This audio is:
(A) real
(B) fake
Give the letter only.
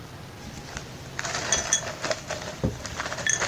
A